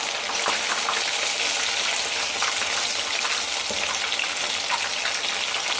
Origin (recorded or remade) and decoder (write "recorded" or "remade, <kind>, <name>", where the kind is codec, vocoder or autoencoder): recorded